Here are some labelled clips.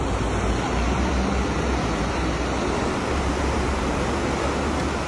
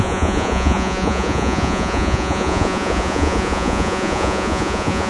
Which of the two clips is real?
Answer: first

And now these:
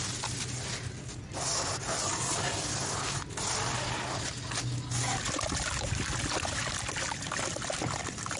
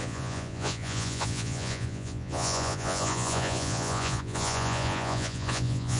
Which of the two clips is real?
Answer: first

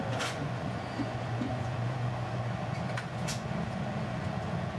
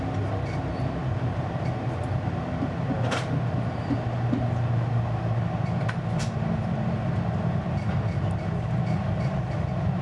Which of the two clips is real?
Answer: second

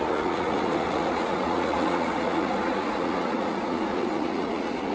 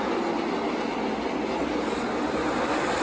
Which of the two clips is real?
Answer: second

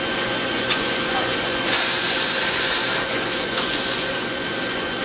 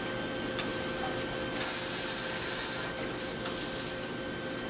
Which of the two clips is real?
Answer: second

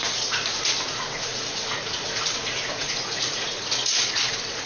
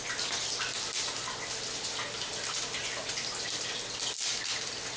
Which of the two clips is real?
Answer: second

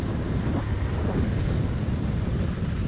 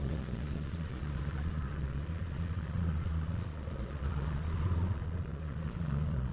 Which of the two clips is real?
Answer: first